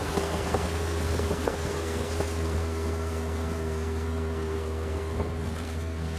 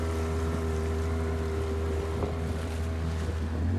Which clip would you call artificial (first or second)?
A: first